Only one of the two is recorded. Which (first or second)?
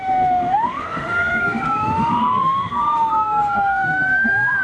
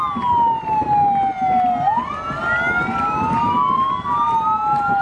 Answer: second